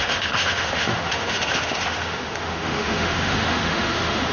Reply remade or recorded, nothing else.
remade